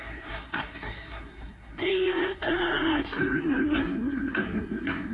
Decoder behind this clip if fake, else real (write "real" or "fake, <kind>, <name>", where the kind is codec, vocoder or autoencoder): fake, codec, SNAC